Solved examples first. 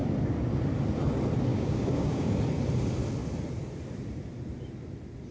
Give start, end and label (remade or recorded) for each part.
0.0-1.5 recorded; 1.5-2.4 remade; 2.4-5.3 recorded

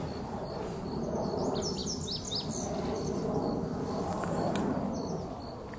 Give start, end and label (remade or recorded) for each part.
0.0-5.8 recorded

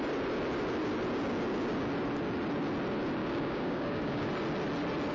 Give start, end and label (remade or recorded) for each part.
0.0-3.2 recorded; 3.2-4.3 remade; 4.3-5.1 recorded

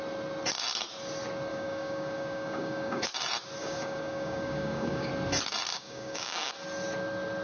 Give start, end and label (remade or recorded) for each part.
0.0-1.5 recorded; 1.5-3.0 remade; 3.0-3.6 recorded; 3.6-5.1 remade; 5.1-5.7 recorded; 5.7-6.5 remade; 6.5-7.4 recorded

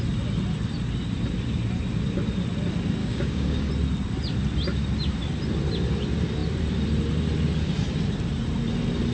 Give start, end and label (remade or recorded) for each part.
0.0-3.0 recorded; 3.0-3.7 remade; 3.7-9.1 recorded

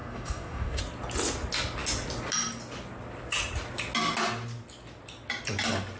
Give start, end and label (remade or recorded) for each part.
0.0-0.8 remade; 0.8-6.0 recorded

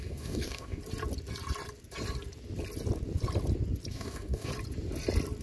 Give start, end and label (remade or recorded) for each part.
0.0-0.8 remade; 0.8-3.9 recorded; 3.9-4.5 remade; 4.5-5.4 recorded

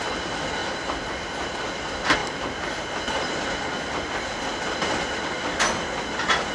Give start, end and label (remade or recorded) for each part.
0.0-6.5 recorded